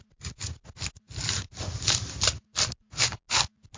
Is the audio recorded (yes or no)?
yes